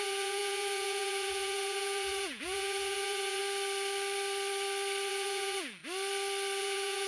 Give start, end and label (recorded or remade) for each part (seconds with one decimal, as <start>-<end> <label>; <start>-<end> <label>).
0.0-3.4 remade; 3.4-5.1 recorded; 5.1-5.8 remade; 5.8-6.6 recorded; 6.6-7.1 remade